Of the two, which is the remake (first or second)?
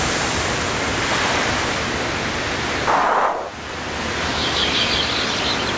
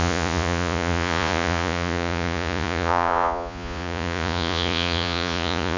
second